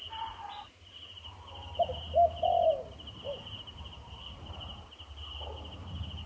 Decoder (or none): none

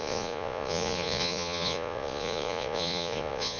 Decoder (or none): vocoder, Vocos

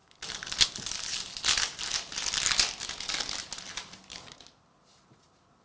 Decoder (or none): none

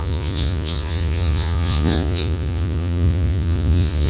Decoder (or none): vocoder, Vocos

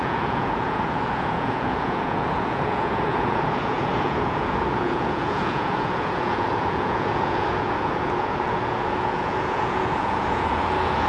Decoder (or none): vocoder, Vocos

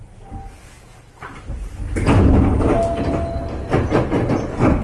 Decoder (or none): none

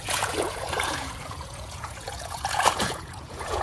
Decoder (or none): vocoder, Vocos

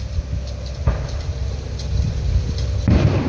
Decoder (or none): none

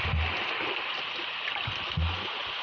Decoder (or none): none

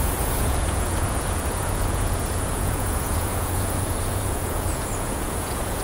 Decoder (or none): vocoder, Vocos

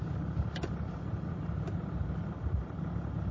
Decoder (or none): none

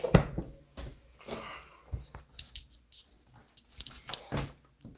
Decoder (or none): none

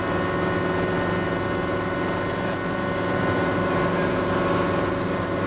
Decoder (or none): none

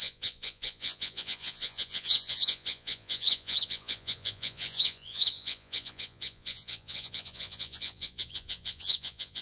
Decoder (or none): vocoder, Vocos